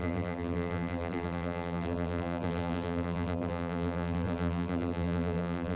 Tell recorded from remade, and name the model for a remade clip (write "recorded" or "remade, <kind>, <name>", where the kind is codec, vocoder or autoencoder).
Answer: remade, vocoder, BigVGAN v2